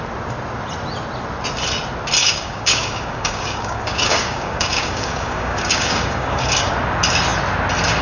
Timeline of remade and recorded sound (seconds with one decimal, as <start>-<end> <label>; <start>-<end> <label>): 0.0-2.2 recorded; 2.2-6.7 remade; 6.7-8.0 recorded